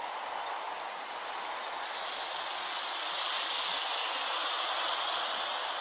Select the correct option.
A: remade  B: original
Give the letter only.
B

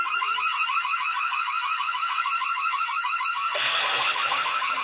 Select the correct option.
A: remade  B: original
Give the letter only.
A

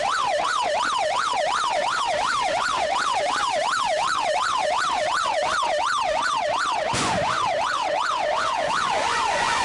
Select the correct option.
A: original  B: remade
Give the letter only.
B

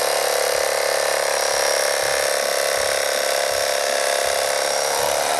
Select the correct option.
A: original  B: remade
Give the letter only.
A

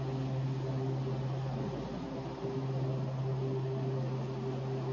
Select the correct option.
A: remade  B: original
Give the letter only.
B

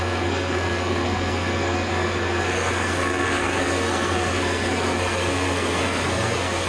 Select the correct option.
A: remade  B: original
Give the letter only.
A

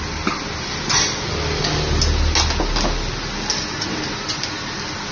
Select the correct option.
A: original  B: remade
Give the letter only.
A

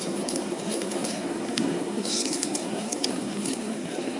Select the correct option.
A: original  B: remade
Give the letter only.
B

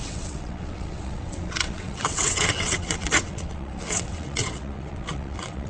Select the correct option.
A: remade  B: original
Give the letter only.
A